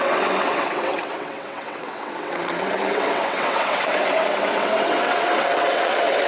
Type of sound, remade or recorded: remade